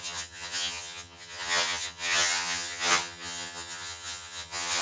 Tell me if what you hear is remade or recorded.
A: remade